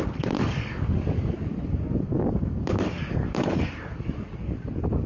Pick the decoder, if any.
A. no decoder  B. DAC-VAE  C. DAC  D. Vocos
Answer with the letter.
C